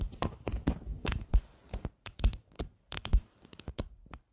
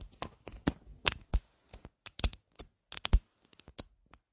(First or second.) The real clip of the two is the second